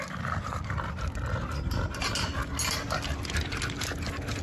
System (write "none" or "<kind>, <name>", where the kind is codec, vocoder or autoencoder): none